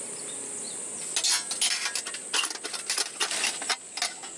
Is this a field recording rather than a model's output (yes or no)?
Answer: yes